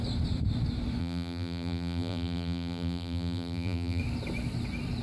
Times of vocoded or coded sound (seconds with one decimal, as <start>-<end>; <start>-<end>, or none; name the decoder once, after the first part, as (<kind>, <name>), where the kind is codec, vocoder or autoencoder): 1.0-4.0 (vocoder, BigVGAN v2)

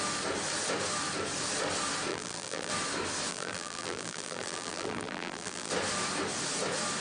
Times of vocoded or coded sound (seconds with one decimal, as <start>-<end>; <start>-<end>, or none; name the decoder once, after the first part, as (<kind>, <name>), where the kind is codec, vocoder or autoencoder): 2.1-2.7 (vocoder, BigVGAN v2); 3.3-5.7

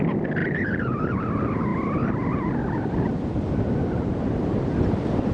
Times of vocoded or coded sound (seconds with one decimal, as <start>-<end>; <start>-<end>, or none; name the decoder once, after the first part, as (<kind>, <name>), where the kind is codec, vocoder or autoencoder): 0.4-1.0 (vocoder, BigVGAN v2)

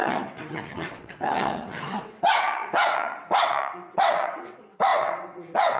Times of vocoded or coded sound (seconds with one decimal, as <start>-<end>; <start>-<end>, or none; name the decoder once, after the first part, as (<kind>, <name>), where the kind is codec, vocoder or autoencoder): 0.0-5.8 (vocoder, WaveNeXt)

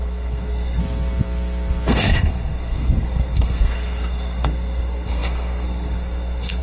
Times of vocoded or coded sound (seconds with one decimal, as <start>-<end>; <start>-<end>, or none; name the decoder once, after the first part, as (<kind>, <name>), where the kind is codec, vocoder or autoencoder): 0.0-0.8 (codec, SNAC); 1.9-6.6

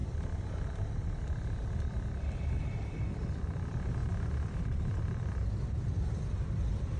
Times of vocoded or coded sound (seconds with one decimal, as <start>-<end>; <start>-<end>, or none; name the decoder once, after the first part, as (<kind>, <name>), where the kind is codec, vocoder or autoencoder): 0.0-4.0 (vocoder, BigVGAN v2); 6.1-7.0

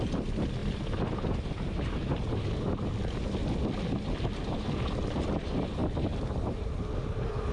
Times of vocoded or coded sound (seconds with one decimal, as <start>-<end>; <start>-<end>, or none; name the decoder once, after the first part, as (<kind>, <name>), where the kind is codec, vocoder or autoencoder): none

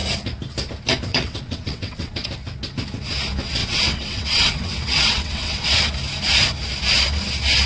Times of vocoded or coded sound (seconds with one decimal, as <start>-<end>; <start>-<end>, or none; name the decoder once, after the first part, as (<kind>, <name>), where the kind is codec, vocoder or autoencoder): 1.1-2.3 (vocoder, WaveNeXt); 3.6-5.8